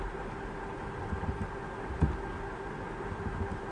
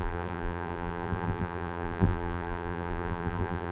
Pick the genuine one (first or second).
first